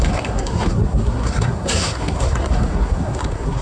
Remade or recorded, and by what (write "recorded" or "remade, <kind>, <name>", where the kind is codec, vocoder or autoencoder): remade, codec, SNAC